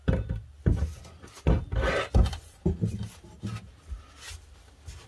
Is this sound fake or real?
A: real